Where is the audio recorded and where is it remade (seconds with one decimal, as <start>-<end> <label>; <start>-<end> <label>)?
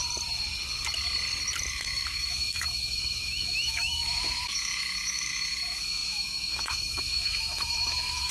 0.0-1.7 recorded; 1.7-8.3 remade